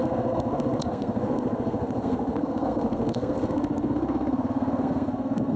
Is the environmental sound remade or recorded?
remade